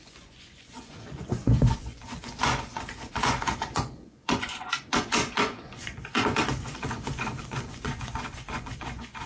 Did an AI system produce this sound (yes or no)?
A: yes